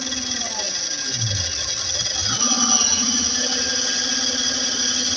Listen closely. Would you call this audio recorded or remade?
recorded